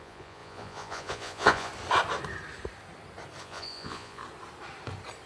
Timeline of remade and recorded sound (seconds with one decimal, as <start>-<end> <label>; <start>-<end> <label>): 0.0-1.7 remade; 1.7-3.4 recorded; 3.4-4.2 remade; 4.2-5.3 recorded